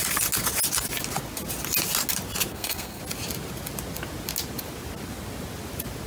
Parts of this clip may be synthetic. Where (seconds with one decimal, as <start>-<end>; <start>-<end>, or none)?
2.5-3.0